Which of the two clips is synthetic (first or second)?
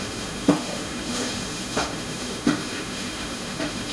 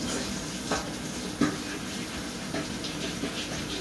first